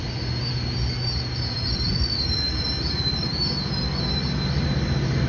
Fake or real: real